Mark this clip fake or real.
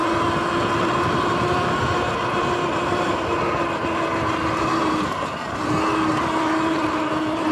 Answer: real